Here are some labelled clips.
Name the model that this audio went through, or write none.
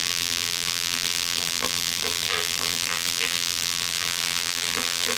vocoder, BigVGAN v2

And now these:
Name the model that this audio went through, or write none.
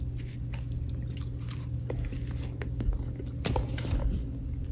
none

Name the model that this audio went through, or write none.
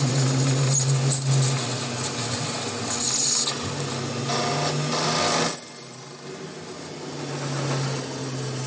none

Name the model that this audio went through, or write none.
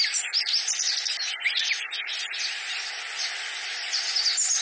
none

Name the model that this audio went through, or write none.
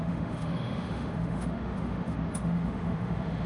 autoencoder, DAC-VAE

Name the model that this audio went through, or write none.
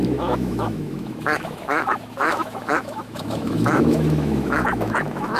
autoencoder, DAC-VAE